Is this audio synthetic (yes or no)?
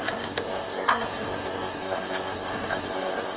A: yes